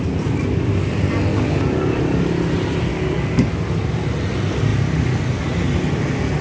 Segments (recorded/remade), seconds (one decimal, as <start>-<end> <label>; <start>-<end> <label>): 0.0-1.3 recorded; 1.3-2.2 remade; 2.2-2.9 recorded; 2.9-3.5 remade; 3.5-6.4 recorded